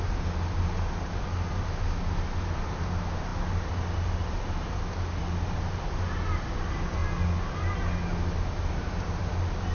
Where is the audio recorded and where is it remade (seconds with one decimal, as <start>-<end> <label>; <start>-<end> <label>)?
0.0-9.7 recorded